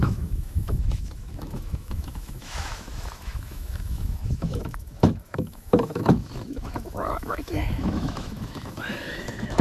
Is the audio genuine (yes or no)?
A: no